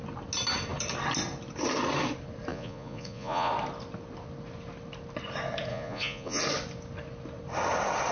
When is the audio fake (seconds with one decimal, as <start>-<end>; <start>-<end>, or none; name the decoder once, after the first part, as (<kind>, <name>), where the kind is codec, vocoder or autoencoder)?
2.5-3.5 (vocoder, Vocos); 5.7-6.4